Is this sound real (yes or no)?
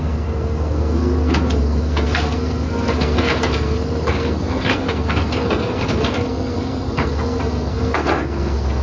no